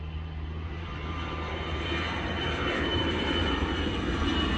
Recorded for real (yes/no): no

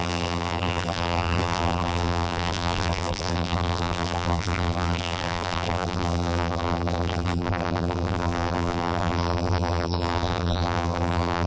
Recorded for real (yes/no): no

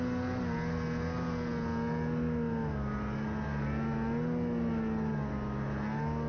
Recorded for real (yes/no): yes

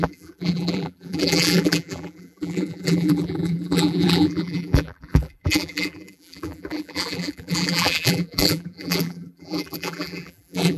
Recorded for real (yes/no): no